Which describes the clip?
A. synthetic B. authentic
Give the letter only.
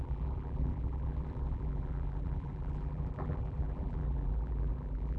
A